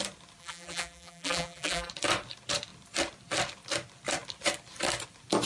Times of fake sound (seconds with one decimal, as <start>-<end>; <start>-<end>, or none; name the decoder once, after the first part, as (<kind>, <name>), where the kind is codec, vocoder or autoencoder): 0.4-1.9 (vocoder, BigVGAN v2)

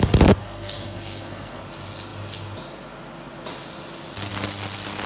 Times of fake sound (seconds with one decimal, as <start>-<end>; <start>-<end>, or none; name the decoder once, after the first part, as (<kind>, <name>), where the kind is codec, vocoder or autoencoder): 0.4-1.6 (codec, SNAC)

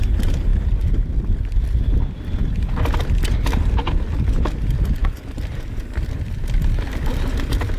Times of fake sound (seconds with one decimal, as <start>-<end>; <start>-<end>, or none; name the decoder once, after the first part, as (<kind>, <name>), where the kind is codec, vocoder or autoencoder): none